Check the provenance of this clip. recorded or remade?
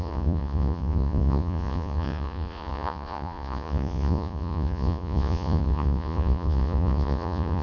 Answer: remade